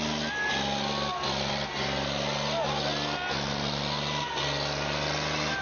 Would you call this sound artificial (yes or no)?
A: no